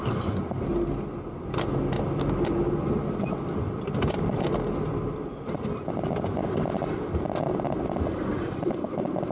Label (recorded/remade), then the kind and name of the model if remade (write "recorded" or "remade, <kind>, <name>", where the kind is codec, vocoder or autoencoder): recorded